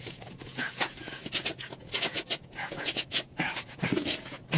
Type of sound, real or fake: fake